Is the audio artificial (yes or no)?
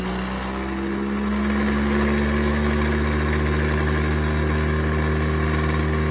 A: no